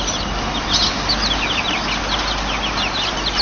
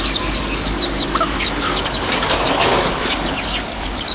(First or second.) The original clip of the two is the first